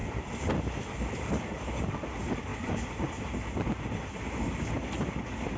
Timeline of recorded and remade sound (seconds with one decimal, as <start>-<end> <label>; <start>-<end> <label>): 0.0-1.4 remade; 1.4-5.6 recorded